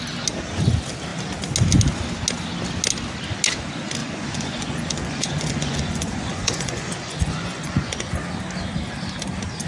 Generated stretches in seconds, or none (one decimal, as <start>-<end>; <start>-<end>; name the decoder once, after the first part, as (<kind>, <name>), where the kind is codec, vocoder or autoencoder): 4.0-8.1 (vocoder, Vocos)